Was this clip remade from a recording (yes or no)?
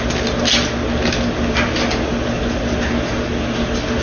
no